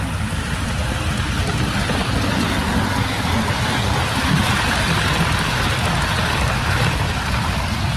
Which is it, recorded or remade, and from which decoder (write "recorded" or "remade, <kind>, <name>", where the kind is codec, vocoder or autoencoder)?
recorded